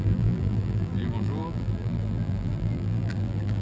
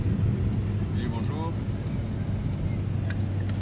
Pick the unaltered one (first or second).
second